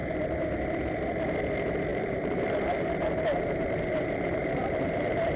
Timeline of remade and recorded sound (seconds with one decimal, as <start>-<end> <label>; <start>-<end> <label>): 0.0-1.9 recorded; 1.9-5.4 remade

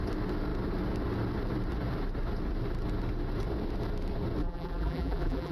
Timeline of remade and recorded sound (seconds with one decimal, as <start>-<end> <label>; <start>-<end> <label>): 0.0-4.4 recorded; 4.4-5.5 remade

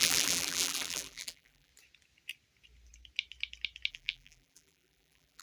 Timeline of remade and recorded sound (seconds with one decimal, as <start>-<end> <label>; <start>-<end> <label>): 0.0-1.7 remade; 1.7-3.9 recorded; 3.9-5.4 remade

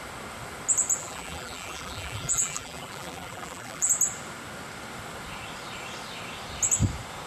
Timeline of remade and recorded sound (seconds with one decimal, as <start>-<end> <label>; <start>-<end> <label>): 0.0-1.0 recorded; 1.0-3.9 remade; 3.9-7.3 recorded

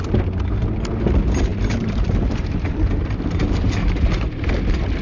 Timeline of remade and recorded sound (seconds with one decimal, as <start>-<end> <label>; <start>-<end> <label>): 0.0-1.5 recorded; 1.5-4.5 remade; 4.5-5.0 recorded